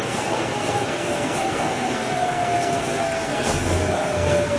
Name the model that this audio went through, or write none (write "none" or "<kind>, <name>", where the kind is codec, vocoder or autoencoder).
codec, SNAC